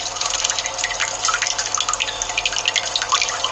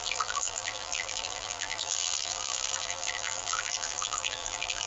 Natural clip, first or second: first